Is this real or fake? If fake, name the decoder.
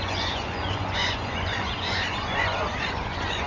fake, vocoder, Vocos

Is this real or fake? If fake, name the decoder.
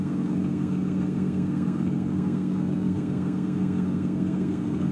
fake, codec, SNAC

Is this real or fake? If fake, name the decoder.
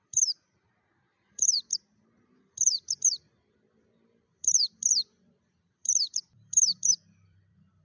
fake, vocoder, BigVGAN v2